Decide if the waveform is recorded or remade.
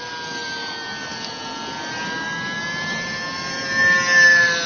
recorded